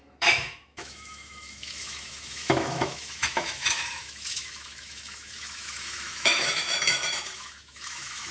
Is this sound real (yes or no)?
no